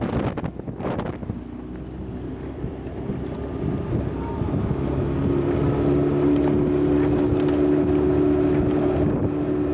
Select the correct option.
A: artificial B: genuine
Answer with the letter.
B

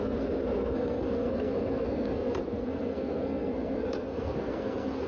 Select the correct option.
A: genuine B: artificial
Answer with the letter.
B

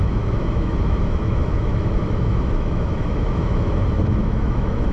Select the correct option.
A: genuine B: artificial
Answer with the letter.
B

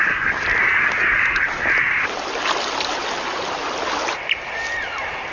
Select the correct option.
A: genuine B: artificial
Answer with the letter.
A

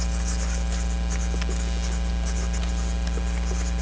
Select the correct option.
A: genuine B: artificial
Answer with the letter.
A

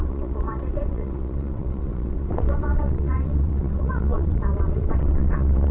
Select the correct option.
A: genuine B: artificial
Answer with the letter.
B